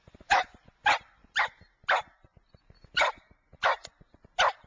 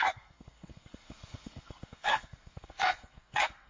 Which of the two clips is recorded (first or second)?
first